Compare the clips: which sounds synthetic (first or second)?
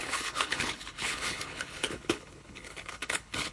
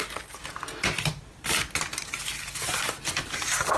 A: first